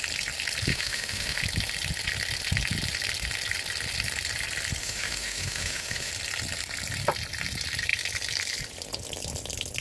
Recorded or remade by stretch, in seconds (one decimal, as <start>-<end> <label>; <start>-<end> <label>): 0.0-0.7 recorded; 0.7-1.4 remade; 1.4-4.8 recorded; 4.8-6.1 remade; 6.1-9.8 recorded